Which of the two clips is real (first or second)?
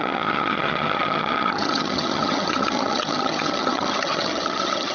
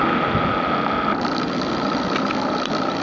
second